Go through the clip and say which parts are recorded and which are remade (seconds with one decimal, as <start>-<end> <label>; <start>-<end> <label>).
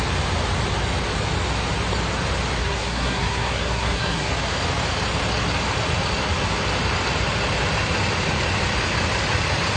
0.0-2.6 recorded; 2.6-4.3 remade; 4.3-9.8 recorded